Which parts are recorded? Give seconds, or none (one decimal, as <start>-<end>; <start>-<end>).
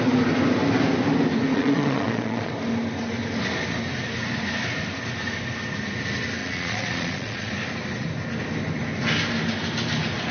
0.0-1.5; 2.5-6.4; 7.5-10.3